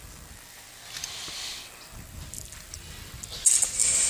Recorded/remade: recorded